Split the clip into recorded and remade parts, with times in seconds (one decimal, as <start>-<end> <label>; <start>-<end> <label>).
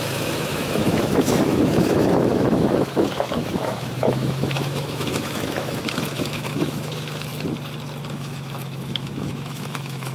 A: 0.0-7.3 remade; 7.3-8.1 recorded; 8.1-10.1 remade